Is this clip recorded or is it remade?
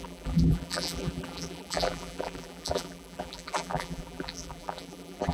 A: remade